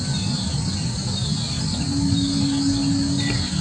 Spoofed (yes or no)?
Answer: no